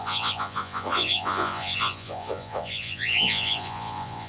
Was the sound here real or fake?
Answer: fake